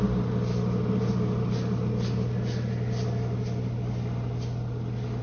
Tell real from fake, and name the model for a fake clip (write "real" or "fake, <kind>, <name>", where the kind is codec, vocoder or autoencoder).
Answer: real